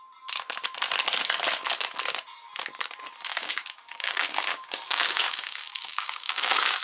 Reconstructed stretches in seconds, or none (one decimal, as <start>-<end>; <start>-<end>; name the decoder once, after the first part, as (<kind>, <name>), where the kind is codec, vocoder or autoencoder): 3.3-6.8 (codec, DAC)